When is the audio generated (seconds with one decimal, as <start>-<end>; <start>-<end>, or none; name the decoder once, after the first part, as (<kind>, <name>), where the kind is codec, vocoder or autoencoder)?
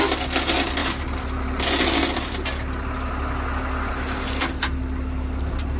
none